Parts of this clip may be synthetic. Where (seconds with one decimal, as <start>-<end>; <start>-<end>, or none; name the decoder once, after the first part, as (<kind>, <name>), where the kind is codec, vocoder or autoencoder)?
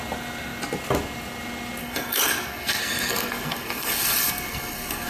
1.8-5.1 (codec, SNAC)